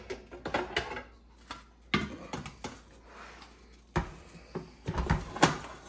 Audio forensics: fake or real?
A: real